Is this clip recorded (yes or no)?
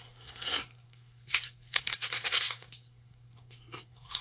no